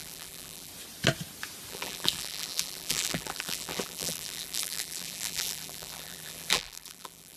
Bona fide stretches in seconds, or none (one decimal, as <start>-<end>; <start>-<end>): 0.7-1.7